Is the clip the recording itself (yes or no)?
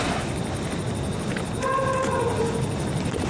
yes